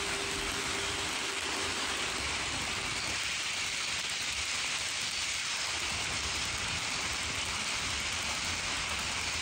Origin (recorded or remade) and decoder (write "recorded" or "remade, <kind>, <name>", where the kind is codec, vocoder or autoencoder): recorded